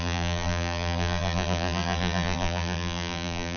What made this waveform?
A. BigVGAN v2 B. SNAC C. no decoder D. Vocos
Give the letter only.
A